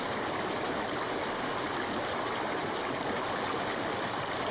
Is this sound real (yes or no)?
yes